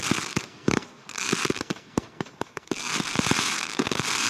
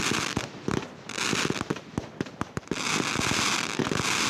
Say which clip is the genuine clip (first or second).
second